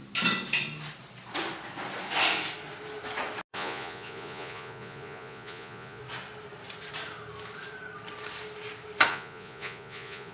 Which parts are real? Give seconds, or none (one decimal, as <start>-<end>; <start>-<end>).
0.0-3.5; 6.0-9.1